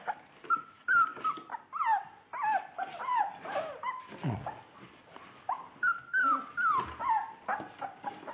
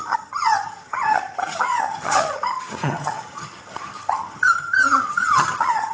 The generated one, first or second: second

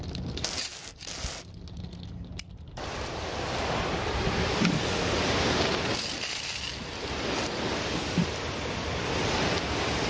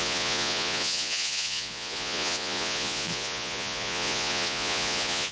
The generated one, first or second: second